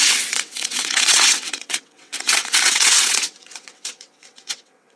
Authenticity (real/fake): fake